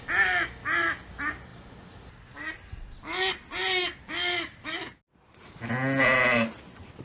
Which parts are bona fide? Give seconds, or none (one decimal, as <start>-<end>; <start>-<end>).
0.0-7.0